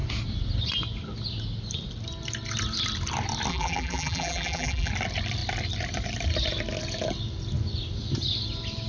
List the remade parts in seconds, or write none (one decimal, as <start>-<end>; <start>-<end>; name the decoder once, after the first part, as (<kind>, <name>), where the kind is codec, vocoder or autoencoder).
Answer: 3.5-4.9 (vocoder, BigVGAN v2)